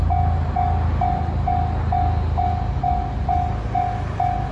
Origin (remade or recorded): recorded